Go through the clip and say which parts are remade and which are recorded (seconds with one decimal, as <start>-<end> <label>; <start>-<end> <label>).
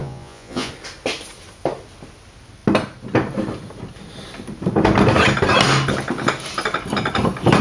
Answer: 0.0-0.7 remade; 0.7-7.6 recorded